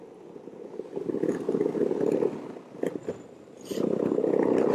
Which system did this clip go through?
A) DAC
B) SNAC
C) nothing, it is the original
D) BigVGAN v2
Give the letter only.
C